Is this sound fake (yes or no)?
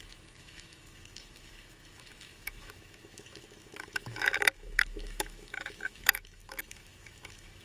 yes